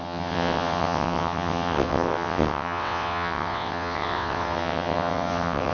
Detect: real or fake fake